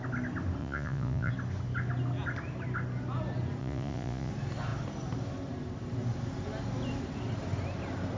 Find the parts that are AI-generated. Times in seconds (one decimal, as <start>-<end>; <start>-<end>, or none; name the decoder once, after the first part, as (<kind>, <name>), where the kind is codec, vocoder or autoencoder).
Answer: 0.6-1.3 (vocoder, Vocos); 3.6-4.3